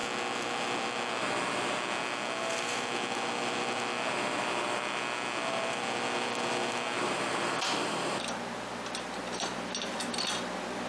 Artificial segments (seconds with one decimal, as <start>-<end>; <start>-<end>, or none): none